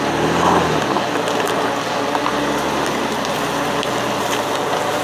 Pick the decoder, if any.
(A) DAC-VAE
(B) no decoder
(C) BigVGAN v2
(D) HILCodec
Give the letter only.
B